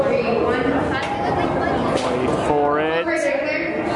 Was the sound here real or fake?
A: real